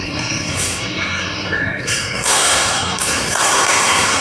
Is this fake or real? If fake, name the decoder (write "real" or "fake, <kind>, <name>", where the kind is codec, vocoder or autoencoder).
fake, codec, SNAC